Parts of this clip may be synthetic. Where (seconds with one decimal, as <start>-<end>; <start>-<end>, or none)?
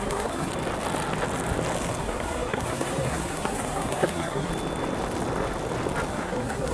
0.0-0.5; 2.0-4.5; 6.1-6.7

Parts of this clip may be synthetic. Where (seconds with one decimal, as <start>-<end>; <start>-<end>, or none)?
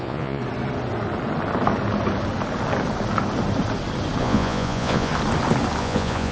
0.0-0.4; 4.2-5.1; 5.8-6.3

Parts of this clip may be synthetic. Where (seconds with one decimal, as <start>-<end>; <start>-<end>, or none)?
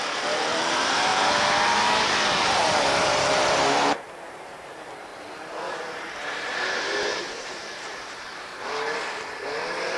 0.0-5.1; 7.2-8.5; 9.6-10.0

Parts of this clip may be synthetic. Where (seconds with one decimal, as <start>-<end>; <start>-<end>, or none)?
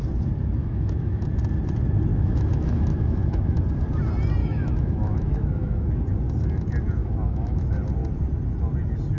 0.6-1.3; 2.1-3.6; 4.4-5.9; 7.0-7.6